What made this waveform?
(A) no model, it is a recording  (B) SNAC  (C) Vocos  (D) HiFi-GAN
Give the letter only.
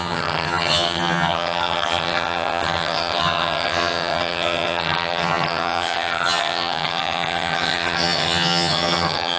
D